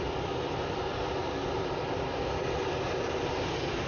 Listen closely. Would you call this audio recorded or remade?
recorded